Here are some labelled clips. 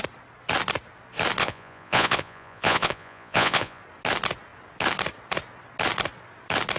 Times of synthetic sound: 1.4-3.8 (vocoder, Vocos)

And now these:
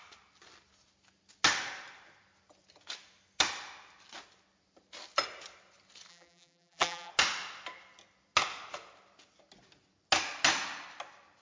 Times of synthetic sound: 6.1-7.1 (vocoder, BigVGAN v2)

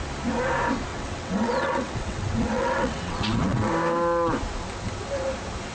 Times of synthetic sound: 0.9-3.7 (vocoder, WaveNeXt)

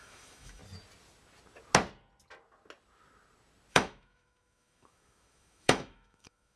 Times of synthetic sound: 0.0-0.6 (autoencoder, DAC-VAE); 3.7-6.6